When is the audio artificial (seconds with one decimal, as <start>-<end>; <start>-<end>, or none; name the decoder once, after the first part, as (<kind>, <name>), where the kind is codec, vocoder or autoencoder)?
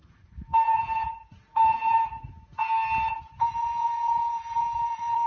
0.0-2.6 (vocoder, Vocos); 3.2-5.3